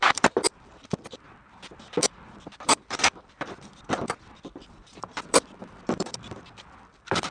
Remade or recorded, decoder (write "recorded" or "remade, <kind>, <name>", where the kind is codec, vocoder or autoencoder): remade, vocoder, BigVGAN v2